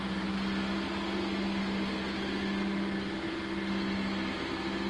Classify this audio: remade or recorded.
recorded